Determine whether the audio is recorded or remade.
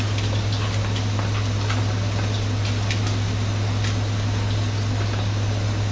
recorded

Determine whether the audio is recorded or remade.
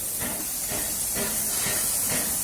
recorded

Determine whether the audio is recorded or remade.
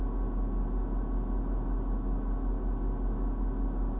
recorded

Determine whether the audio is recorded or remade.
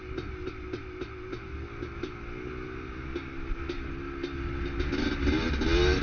recorded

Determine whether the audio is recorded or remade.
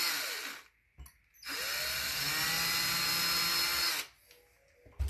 recorded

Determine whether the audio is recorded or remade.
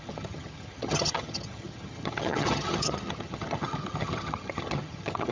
remade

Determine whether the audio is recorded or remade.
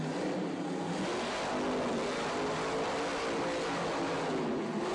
recorded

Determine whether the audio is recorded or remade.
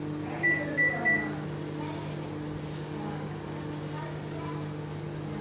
recorded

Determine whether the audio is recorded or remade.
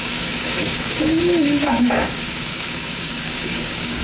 remade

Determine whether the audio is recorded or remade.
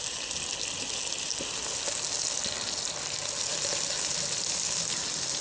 recorded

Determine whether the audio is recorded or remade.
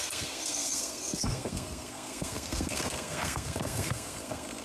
remade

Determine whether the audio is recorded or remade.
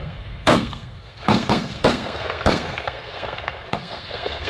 remade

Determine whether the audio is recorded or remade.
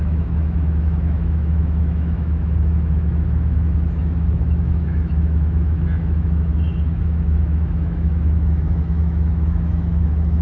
remade